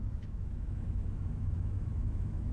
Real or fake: fake